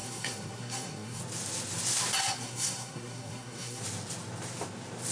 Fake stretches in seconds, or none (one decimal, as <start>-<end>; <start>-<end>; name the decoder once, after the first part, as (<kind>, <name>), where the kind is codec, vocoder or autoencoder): 0.0-1.2 (codec, SNAC); 2.2-3.8